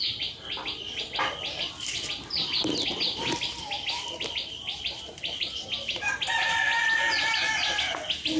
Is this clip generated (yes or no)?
no